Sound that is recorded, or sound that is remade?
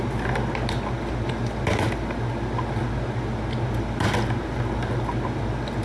recorded